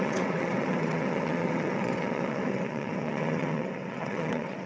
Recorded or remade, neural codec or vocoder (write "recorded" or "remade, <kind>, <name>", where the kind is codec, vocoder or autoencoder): remade, vocoder, WaveNeXt